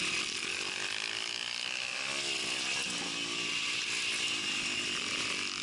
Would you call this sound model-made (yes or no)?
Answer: no